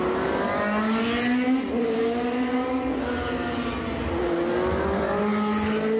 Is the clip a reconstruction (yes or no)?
no